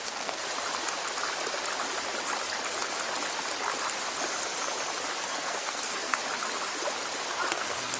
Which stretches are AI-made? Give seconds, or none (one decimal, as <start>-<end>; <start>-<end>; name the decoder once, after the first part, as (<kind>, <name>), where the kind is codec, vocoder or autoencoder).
0.0-0.4 (codec, SNAC); 5.2-6.2; 7.5-8.0